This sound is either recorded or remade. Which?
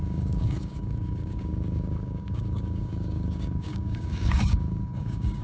remade